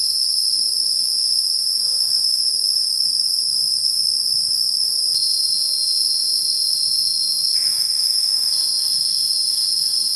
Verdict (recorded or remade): remade